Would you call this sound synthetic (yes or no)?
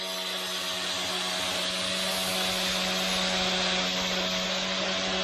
no